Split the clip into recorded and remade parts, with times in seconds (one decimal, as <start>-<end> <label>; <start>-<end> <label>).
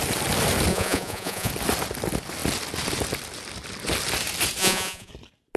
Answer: 0.0-0.7 recorded; 0.7-1.5 remade; 1.5-4.6 recorded; 4.6-5.1 remade; 5.1-5.6 recorded